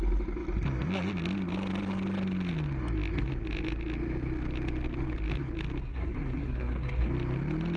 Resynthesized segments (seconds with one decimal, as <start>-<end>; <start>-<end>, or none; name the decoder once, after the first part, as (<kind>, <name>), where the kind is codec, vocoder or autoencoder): 5.8-7.1 (codec, SNAC)

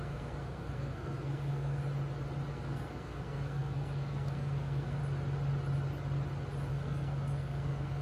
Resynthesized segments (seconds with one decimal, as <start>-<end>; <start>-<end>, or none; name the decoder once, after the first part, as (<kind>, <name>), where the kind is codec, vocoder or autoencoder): 0.0-1.8 (codec, SNAC); 2.5-5.0; 6.7-8.0